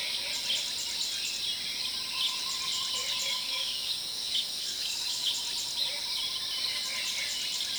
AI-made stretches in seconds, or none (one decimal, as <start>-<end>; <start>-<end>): 3.3-5.3